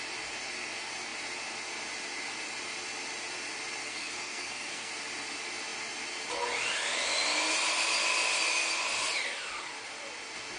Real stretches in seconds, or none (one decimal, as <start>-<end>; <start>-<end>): 0.0-3.8; 4.9-10.6